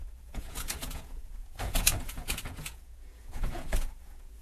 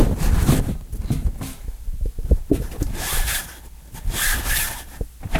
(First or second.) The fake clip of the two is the first